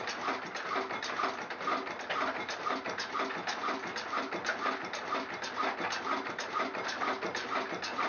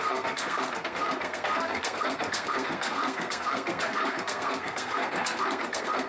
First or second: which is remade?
second